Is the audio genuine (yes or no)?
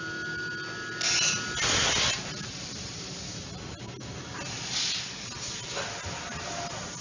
yes